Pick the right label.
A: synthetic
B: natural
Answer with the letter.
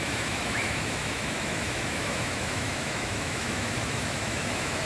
A